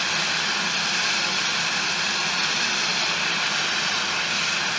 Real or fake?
fake